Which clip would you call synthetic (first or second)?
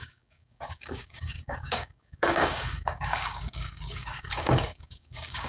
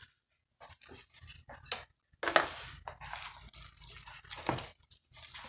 first